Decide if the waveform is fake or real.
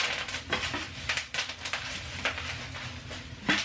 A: real